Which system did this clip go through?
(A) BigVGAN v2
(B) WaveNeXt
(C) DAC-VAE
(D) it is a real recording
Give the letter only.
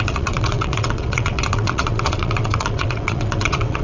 B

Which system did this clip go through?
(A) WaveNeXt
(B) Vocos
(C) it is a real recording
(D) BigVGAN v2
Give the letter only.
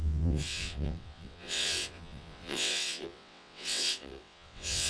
A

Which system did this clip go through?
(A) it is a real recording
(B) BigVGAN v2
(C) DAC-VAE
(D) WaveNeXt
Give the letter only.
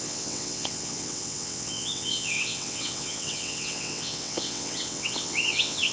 D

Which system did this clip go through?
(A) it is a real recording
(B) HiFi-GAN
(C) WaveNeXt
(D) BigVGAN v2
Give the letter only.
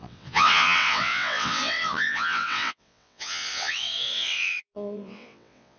C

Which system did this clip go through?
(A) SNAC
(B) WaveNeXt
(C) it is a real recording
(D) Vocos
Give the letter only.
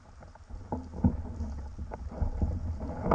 C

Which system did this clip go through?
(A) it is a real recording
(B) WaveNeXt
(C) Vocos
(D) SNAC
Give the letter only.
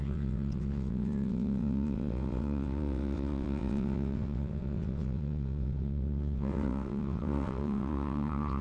B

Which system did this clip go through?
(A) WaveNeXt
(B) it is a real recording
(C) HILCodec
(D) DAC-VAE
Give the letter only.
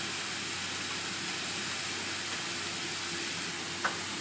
B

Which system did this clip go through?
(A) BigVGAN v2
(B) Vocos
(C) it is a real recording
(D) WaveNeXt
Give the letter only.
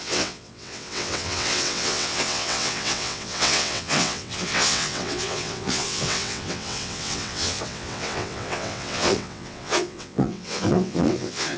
D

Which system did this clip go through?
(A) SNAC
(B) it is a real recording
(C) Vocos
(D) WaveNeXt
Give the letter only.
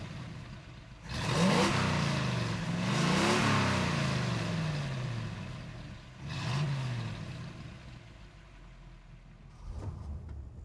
B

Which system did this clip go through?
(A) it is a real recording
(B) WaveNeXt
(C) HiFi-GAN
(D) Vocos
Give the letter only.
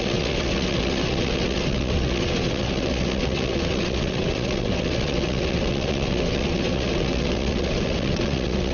B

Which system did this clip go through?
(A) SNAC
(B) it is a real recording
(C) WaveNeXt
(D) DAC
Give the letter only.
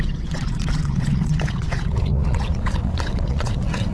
C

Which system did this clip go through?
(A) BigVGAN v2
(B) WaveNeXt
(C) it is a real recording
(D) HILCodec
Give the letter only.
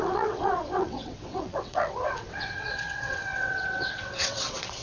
B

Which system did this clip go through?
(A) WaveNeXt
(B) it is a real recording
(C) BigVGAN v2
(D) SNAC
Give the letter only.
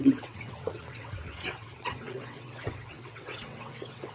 A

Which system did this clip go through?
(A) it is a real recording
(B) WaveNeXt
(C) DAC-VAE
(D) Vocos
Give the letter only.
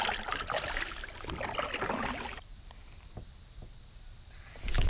A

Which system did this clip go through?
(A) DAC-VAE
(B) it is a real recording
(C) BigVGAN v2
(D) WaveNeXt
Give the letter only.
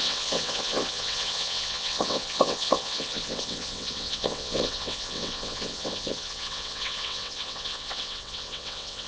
D